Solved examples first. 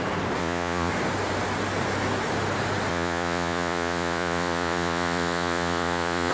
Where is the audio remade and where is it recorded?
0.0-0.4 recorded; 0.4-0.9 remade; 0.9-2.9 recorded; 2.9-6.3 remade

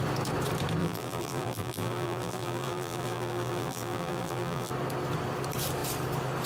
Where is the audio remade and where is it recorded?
0.0-0.8 recorded; 0.8-4.7 remade; 4.7-6.5 recorded

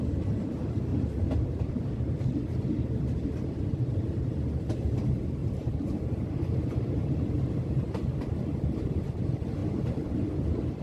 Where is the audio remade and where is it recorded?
0.0-0.9 recorded; 0.9-1.6 remade; 1.6-5.4 recorded; 5.4-7.8 remade; 7.8-10.8 recorded

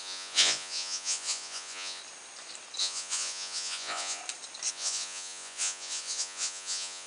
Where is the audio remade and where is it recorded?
0.0-2.0 remade; 2.0-2.8 recorded; 2.8-4.2 remade; 4.2-4.7 recorded; 4.7-7.1 remade

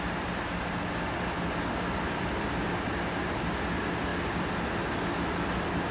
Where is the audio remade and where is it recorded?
0.0-5.9 recorded

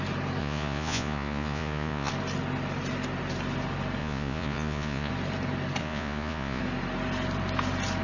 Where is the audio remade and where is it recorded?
0.0-0.4 recorded; 0.4-2.1 remade; 2.1-4.0 recorded; 4.0-5.1 remade; 5.1-5.8 recorded; 5.8-6.6 remade; 6.6-8.0 recorded